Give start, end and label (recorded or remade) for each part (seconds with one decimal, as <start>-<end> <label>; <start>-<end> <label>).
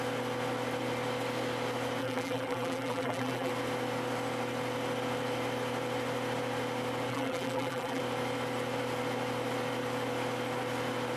0.0-2.0 recorded; 2.0-3.5 remade; 3.5-7.1 recorded; 7.1-8.0 remade; 8.0-11.2 recorded